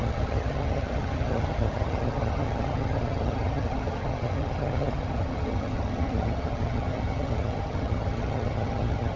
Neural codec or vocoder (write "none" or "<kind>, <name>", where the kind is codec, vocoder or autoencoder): vocoder, HiFi-GAN